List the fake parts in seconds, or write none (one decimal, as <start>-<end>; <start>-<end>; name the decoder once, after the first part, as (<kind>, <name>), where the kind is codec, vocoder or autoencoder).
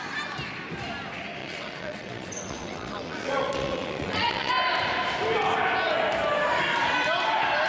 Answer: 1.4-4.5 (vocoder, WaveNeXt)